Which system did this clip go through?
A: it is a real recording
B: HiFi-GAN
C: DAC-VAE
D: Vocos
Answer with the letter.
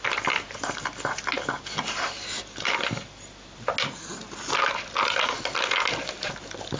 A